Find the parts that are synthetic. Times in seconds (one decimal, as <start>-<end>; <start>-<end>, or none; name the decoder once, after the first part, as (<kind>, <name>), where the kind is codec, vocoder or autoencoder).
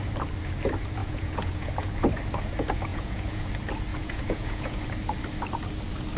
1.0-1.7 (vocoder, Vocos); 2.9-3.5; 3.9-4.8